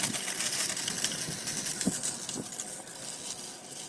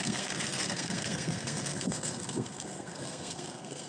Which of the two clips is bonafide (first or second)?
first